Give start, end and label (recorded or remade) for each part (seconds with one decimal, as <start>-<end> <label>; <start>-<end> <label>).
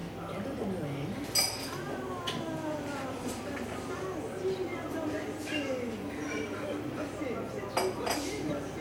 0.0-1.9 recorded; 1.9-4.7 remade; 4.7-5.6 recorded; 5.6-7.2 remade; 7.2-8.3 recorded; 8.3-8.8 remade